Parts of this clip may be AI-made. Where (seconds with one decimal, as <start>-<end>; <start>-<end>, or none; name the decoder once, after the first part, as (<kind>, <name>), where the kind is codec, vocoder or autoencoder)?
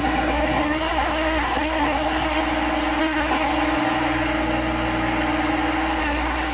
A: 0.0-2.4 (codec, SNAC); 3.0-3.5; 6.0-6.5